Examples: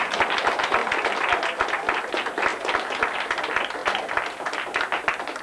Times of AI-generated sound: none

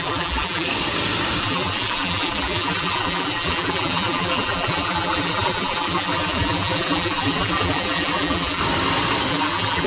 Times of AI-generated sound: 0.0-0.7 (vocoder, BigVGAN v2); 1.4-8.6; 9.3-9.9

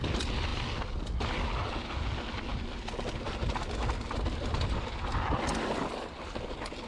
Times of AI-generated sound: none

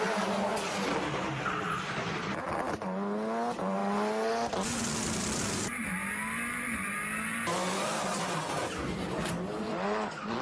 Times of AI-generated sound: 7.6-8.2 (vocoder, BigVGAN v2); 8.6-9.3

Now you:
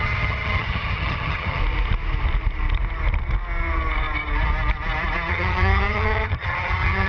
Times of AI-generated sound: 0.0-1.6 (vocoder, HiFi-GAN); 5.3-7.1

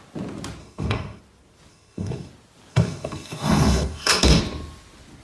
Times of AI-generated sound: 0.6-1.2 (codec, SNAC); 1.7-2.3; 2.7-4.4

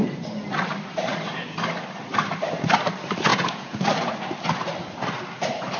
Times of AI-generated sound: 3.3-3.8 (vocoder, Vocos)

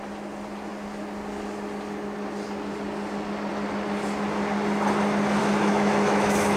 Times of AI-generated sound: 5.4-6.6 (autoencoder, DAC-VAE)